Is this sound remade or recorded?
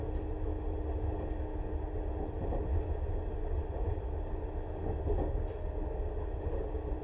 recorded